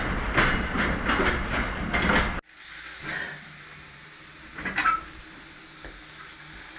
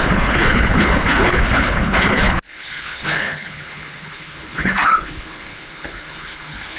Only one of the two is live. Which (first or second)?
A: first